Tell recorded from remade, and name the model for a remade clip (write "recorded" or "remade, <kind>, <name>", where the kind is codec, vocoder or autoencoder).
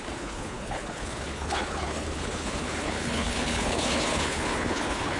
remade, codec, HILCodec